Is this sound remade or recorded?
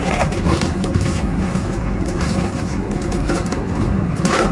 remade